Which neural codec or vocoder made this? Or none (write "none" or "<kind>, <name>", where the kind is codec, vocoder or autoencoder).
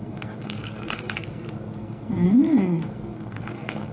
codec, SNAC